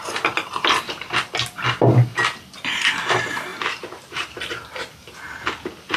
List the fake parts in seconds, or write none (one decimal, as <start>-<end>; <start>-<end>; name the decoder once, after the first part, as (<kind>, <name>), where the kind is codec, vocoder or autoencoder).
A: 3.5-4.7 (vocoder, BigVGAN v2)